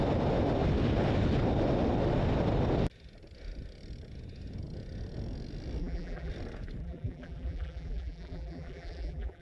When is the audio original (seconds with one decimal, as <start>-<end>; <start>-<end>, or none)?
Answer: 0.0-5.8; 6.3-6.8